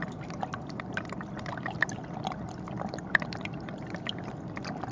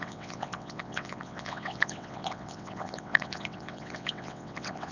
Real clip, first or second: first